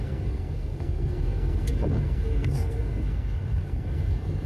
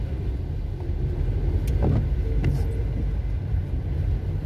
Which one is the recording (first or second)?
second